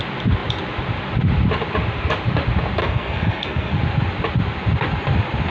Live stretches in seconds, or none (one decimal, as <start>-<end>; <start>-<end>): 0.0-2.8; 3.8-5.5